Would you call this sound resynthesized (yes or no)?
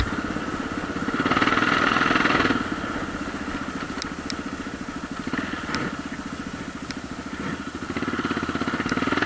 no